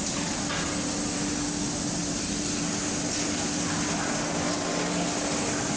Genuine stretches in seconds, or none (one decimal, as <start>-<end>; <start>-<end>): 0.0-5.8